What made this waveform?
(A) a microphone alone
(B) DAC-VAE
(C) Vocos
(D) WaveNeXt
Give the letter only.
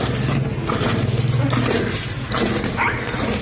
A